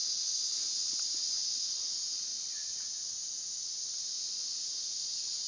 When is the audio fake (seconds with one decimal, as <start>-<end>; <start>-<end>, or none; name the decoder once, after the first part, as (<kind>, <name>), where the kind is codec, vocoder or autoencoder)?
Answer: none